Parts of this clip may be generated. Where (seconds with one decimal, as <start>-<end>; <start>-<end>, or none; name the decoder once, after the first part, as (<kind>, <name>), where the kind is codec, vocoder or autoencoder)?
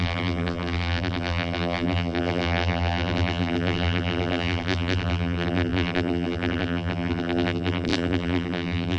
0.0-9.0 (vocoder, BigVGAN v2)